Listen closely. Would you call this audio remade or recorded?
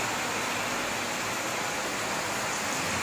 recorded